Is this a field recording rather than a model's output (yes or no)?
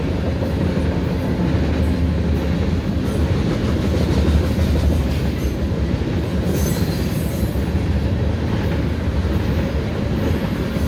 yes